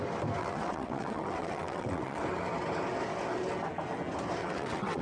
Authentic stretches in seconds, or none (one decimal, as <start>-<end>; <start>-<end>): 0.0-0.4; 2.2-4.4